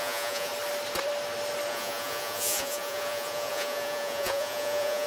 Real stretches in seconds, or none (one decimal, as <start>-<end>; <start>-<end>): 0.5-1.7